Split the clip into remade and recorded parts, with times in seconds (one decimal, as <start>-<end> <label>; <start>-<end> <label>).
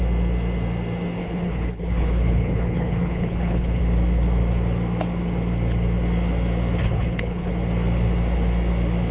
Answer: 0.0-1.2 recorded; 1.2-3.8 remade; 3.8-6.8 recorded; 6.8-7.5 remade; 7.5-9.1 recorded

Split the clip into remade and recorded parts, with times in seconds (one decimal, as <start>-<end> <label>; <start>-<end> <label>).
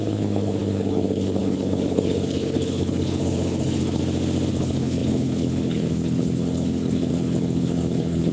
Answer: 0.0-4.0 remade; 4.0-4.5 recorded; 4.5-8.3 remade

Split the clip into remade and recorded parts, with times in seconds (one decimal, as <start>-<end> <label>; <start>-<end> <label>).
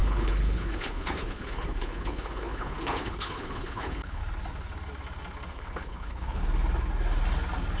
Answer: 0.0-4.2 remade; 4.2-5.5 recorded; 5.5-6.4 remade; 6.4-7.8 recorded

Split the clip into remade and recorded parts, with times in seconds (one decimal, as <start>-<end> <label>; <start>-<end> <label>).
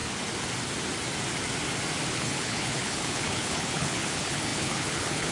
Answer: 0.0-2.1 recorded; 2.1-5.3 remade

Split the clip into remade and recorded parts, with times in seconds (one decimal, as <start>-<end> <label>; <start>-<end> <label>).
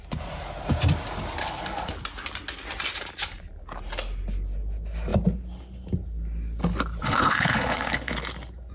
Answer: 0.0-1.4 recorded; 1.4-1.9 remade; 1.9-7.0 recorded; 7.0-8.1 remade; 8.1-8.7 recorded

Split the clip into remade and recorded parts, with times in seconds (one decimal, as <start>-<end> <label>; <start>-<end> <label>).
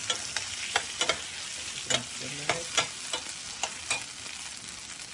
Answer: 0.0-5.1 recorded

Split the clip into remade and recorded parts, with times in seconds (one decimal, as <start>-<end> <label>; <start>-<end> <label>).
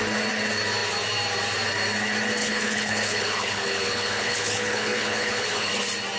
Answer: 0.0-2.4 recorded; 2.4-5.7 remade; 5.7-6.2 recorded